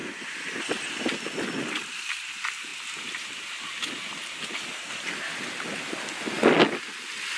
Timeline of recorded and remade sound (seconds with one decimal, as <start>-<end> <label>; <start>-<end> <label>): 0.0-7.4 recorded